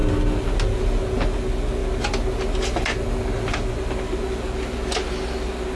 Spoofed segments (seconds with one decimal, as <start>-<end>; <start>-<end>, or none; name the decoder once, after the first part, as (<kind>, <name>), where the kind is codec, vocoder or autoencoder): none